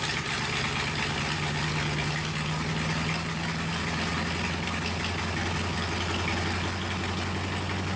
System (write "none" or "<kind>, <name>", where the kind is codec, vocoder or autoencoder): none